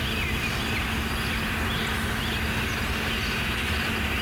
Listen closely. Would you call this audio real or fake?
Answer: real